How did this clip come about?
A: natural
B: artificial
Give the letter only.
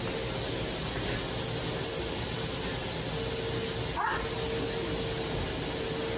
A